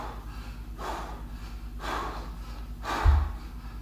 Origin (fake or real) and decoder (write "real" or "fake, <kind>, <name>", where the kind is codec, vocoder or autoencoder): real